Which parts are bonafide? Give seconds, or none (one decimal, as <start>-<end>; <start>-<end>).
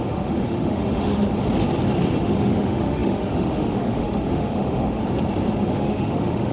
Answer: 1.3-2.2; 5.0-5.6